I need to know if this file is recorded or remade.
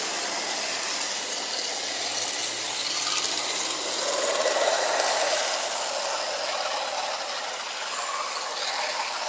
recorded